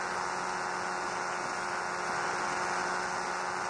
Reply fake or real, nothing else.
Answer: real